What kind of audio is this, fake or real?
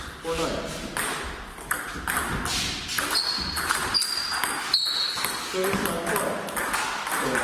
real